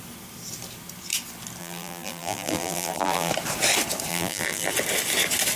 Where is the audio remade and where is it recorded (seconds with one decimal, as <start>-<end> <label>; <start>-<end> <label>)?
0.0-1.6 recorded; 1.6-3.3 remade; 3.3-4.1 recorded; 4.1-4.7 remade; 4.7-5.6 recorded